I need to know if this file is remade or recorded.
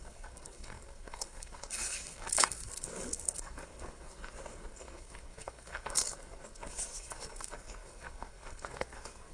remade